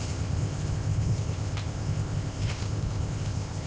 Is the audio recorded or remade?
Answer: remade